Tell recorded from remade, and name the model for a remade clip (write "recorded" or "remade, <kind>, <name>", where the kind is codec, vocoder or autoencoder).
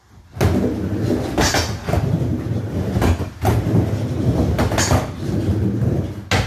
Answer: recorded